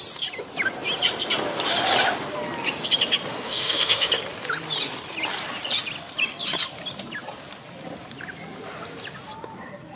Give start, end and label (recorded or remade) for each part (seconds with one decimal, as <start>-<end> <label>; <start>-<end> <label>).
0.0-3.3 recorded; 3.3-4.1 remade; 4.1-10.0 recorded